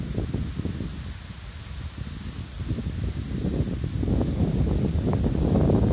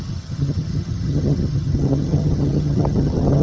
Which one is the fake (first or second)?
second